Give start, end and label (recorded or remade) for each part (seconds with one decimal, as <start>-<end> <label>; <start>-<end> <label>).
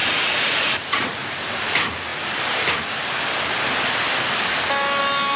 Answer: 0.0-1.2 remade; 1.2-5.4 recorded